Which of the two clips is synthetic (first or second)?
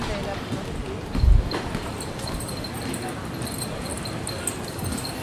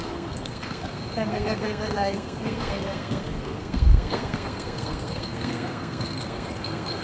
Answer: second